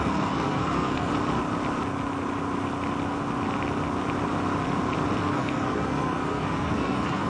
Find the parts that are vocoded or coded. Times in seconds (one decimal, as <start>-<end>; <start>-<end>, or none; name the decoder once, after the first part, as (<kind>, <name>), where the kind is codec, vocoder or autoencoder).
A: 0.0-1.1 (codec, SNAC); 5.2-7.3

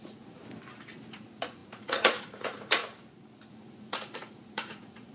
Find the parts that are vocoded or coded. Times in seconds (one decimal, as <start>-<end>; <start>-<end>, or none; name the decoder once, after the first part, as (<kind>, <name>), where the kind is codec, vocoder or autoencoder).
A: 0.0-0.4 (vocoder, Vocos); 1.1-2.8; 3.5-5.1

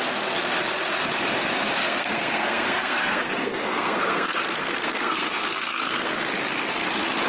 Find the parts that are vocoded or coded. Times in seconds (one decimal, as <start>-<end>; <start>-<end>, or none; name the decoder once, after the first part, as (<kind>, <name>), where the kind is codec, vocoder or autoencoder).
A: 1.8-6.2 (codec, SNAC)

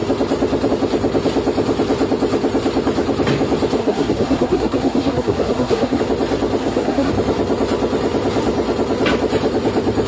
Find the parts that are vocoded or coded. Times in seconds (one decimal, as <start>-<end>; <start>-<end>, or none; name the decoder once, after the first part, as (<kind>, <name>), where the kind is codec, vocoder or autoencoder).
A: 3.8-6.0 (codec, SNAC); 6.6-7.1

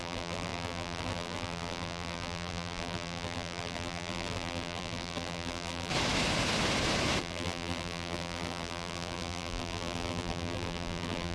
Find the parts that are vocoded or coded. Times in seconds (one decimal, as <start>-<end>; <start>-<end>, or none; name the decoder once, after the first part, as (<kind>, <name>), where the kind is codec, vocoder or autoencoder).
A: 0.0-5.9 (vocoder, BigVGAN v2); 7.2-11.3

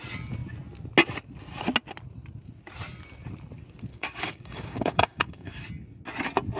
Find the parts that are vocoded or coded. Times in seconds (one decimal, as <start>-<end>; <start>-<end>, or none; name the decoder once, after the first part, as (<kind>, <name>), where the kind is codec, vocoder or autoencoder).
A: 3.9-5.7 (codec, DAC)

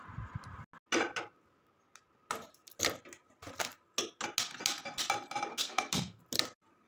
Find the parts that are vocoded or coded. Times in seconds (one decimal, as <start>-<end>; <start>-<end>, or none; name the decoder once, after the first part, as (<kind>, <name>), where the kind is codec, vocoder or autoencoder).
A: 5.5-6.2 (codec, SNAC)